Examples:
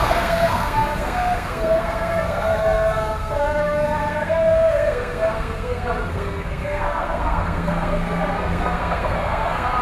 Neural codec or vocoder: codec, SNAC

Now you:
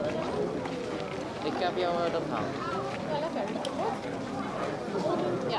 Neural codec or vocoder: none